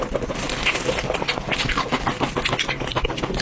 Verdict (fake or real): real